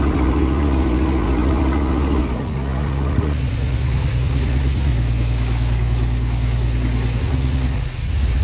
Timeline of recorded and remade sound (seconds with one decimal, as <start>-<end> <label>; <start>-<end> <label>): 0.0-4.9 remade; 4.9-7.2 recorded; 7.2-8.4 remade